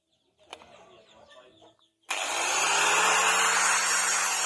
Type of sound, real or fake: fake